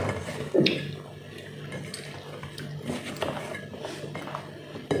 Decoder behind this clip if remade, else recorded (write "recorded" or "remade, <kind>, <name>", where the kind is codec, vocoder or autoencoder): recorded